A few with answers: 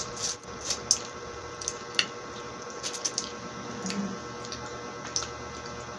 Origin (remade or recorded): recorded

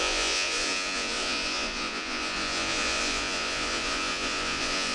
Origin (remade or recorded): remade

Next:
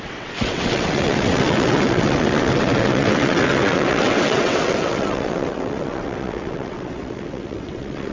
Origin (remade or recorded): remade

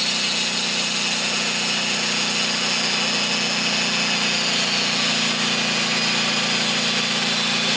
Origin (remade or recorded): recorded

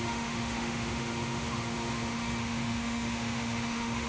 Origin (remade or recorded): remade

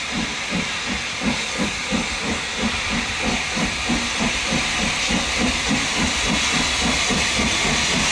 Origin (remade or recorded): recorded